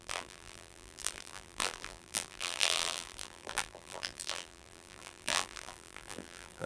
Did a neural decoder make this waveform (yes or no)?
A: yes